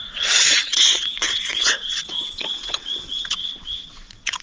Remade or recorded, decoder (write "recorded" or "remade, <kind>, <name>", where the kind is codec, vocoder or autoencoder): remade, vocoder, WaveNeXt